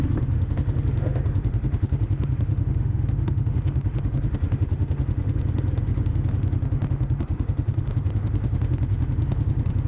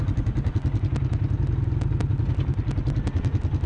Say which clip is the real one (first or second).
second